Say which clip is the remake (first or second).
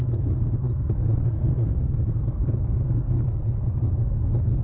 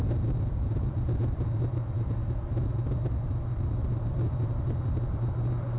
first